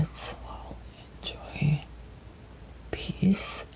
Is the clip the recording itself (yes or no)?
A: yes